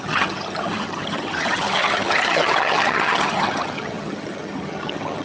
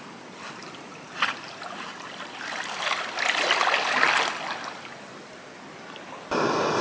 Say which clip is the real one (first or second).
second